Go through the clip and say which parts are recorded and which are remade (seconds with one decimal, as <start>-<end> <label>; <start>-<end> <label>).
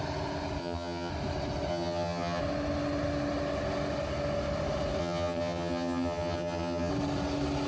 0.0-0.6 recorded; 0.6-1.1 remade; 1.1-1.7 recorded; 1.7-2.4 remade; 2.4-5.0 recorded; 5.0-6.9 remade; 6.9-7.7 recorded